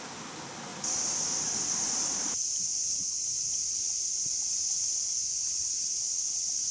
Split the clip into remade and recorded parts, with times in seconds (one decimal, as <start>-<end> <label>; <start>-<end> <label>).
0.0-0.7 recorded; 0.7-4.7 remade; 4.7-5.2 recorded; 5.2-6.7 remade